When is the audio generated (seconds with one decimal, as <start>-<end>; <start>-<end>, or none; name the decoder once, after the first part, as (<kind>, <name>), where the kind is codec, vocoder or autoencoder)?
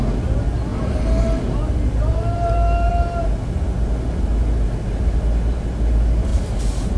2.1-2.9 (vocoder, BigVGAN v2); 6.3-7.0